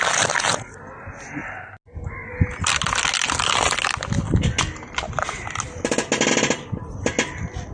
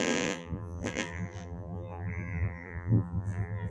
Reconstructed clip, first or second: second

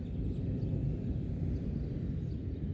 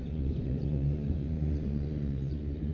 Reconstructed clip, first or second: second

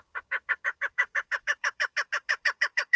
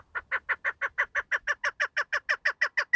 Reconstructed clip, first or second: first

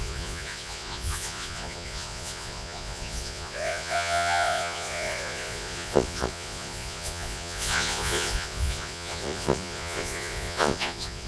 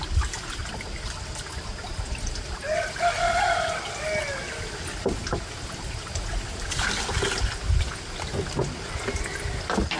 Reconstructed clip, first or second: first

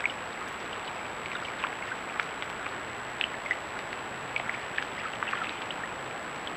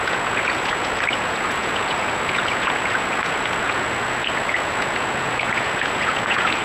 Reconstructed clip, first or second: second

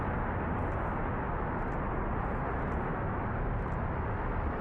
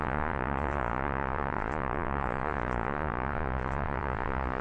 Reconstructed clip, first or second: second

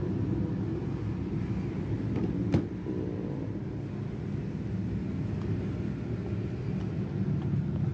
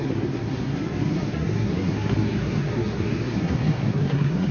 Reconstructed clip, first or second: second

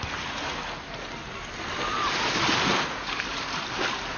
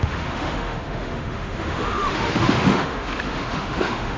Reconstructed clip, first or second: second